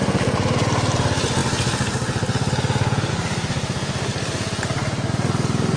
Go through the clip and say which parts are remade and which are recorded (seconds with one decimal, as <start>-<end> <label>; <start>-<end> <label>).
0.0-5.8 recorded